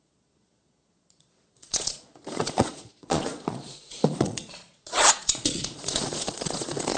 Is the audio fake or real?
fake